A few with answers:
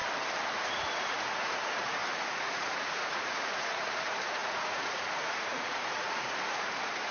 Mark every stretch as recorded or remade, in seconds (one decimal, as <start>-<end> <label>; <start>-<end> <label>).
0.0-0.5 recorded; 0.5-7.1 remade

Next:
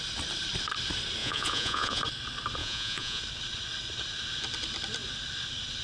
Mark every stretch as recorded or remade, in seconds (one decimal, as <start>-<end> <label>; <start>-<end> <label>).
0.0-1.2 recorded; 1.2-2.0 remade; 2.0-2.6 recorded; 2.6-3.2 remade; 3.2-5.8 recorded

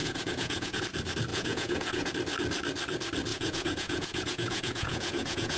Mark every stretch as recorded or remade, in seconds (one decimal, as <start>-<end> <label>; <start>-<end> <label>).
0.0-0.8 remade; 0.8-1.3 recorded; 1.3-2.1 remade; 2.1-3.3 recorded; 3.3-5.6 remade

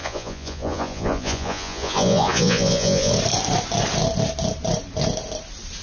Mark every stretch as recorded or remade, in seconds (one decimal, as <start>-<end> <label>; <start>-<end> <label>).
0.0-3.1 remade; 3.1-5.8 recorded

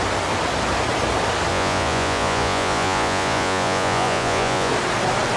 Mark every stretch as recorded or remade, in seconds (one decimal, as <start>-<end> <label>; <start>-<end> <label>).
0.0-1.5 recorded; 1.5-4.7 remade; 4.7-5.4 recorded

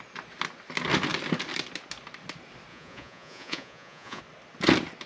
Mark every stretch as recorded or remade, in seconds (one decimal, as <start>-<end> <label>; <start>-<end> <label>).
0.0-2.7 recorded; 2.7-4.2 remade; 4.2-5.1 recorded